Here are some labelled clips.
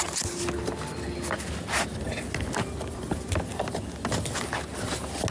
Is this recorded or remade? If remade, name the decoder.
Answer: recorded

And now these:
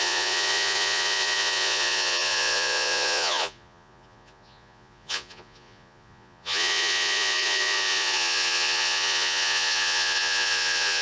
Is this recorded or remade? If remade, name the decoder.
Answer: remade, vocoder, Vocos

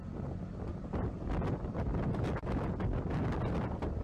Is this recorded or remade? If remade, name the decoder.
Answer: recorded